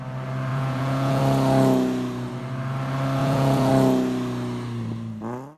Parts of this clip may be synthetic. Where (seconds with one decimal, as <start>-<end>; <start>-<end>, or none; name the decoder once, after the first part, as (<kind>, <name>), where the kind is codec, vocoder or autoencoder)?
0.5-1.2 (vocoder, Vocos); 3.2-3.7